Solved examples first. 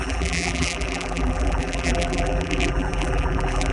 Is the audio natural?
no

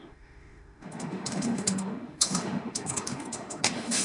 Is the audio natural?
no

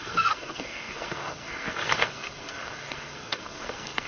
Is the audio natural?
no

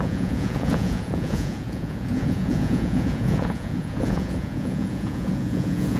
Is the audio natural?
no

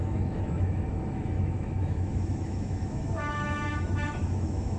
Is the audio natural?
no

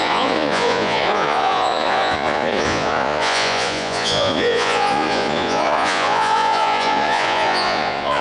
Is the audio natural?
no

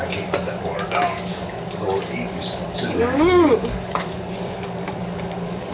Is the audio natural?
no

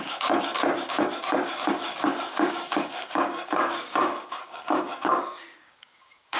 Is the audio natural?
no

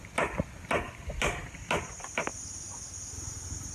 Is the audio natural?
yes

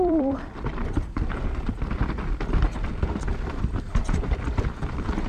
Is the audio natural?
no